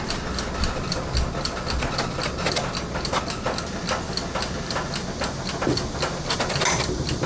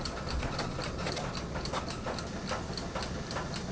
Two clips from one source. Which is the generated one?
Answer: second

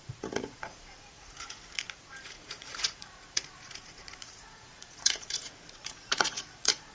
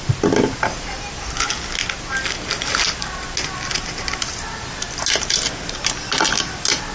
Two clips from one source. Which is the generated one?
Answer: first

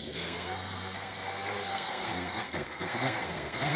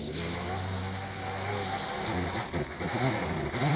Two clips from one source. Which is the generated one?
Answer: first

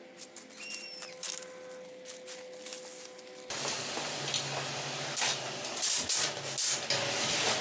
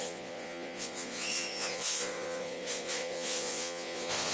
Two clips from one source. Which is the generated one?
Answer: second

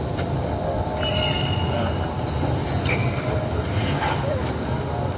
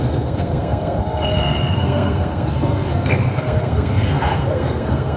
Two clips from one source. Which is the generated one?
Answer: second